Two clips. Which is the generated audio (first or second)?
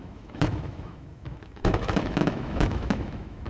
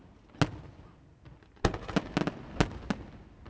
first